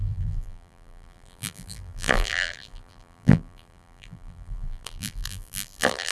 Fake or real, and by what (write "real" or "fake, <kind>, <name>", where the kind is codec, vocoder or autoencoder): fake, vocoder, BigVGAN v2